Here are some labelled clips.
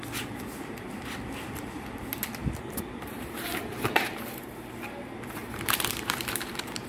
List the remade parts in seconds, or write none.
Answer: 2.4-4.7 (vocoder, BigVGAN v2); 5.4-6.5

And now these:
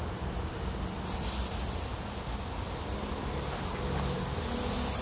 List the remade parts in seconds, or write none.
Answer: none

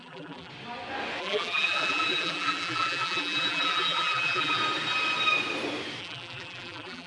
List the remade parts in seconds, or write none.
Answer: 0.0-0.5 (vocoder, BigVGAN v2); 1.2-4.6; 6.0-7.1

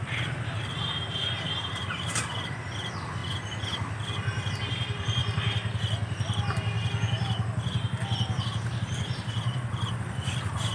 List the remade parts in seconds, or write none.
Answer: 0.0-3.2 (vocoder, BigVGAN v2); 4.5-5.2; 8.4-10.7

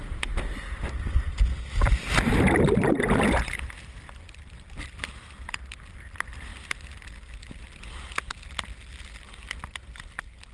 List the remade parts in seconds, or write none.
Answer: none

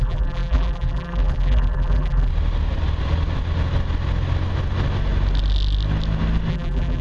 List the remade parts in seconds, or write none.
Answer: 0.0-2.3 (vocoder, BigVGAN v2); 6.5-7.0